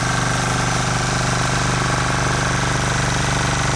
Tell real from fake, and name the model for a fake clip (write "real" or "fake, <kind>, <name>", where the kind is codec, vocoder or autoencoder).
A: real